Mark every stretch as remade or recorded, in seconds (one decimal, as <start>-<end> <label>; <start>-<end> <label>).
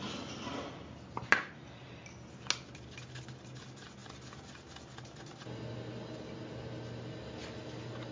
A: 0.0-8.1 recorded